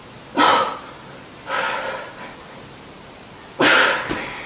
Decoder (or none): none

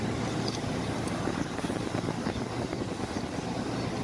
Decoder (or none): none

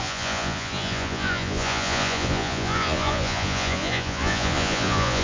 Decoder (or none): vocoder, Vocos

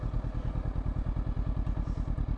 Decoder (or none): none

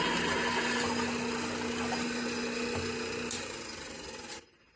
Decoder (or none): none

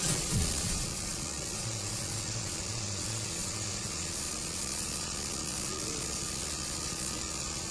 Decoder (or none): vocoder, Vocos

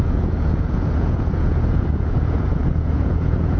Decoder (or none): vocoder, Vocos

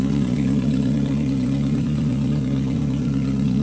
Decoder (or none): vocoder, Vocos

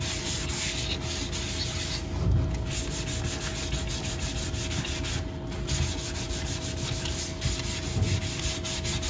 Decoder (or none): none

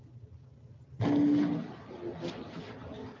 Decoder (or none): none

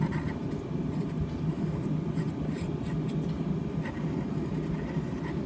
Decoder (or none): none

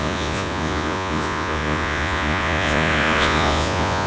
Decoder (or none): vocoder, Vocos